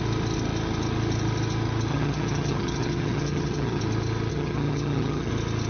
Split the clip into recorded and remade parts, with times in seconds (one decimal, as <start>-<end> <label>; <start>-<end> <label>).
0.0-1.9 recorded; 1.9-3.8 remade; 3.8-4.3 recorded; 4.3-5.3 remade; 5.3-5.7 recorded